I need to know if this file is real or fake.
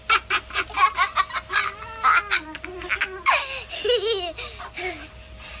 real